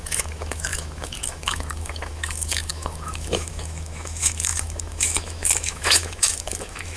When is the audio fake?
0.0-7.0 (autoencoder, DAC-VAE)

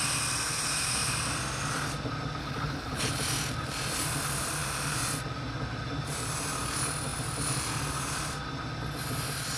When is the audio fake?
2.4-3.1 (codec, HILCodec)

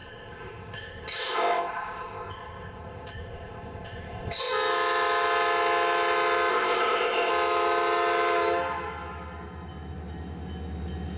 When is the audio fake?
0.0-4.5 (codec, ZipCodec); 6.5-7.3

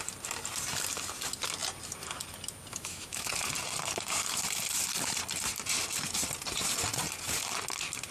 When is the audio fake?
2.7-3.3 (autoencoder, DAC-VAE)

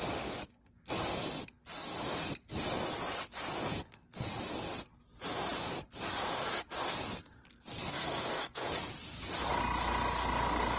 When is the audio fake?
7.9-8.7 (codec, SNAC)

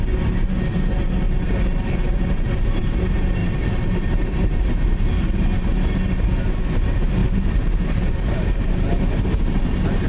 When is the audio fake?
2.0-2.8 (vocoder, BigVGAN v2); 3.4-5.1; 7.2-9.6

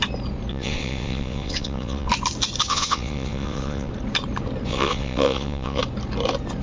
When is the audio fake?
0.5-2.1 (vocoder, WaveNeXt); 2.7-3.9; 4.7-5.8